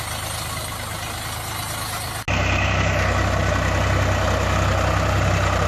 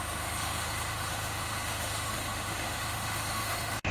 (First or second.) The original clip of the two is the first